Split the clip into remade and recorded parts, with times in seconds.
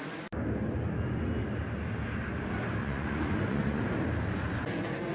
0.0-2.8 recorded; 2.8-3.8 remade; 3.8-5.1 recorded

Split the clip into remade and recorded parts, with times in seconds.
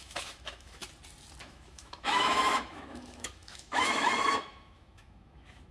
0.0-0.8 remade; 0.8-1.4 recorded; 1.4-5.7 remade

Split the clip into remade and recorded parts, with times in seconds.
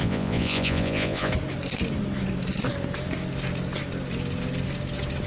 0.0-1.3 remade; 1.3-5.3 recorded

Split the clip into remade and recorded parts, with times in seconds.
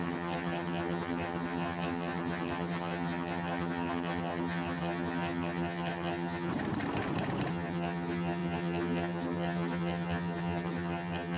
0.0-6.5 remade; 6.5-7.5 recorded; 7.5-11.4 remade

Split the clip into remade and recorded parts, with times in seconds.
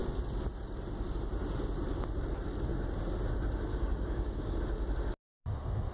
0.0-3.7 recorded; 3.7-4.6 remade; 4.6-5.9 recorded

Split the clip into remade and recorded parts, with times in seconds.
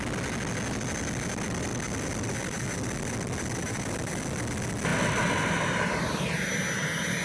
0.0-7.2 recorded